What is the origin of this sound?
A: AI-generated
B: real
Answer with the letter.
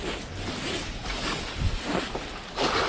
B